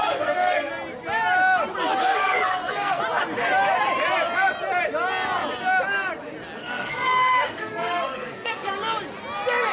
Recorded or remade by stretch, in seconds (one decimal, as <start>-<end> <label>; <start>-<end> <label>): 0.0-0.7 remade; 0.7-2.0 recorded; 2.0-3.0 remade; 3.0-6.6 recorded; 6.6-8.7 remade; 8.7-9.7 recorded